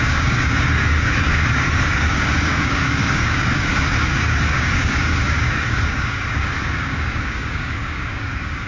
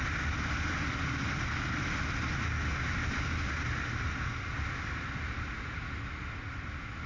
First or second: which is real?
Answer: second